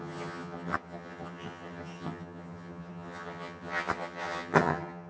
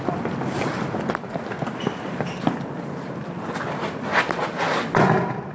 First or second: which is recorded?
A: second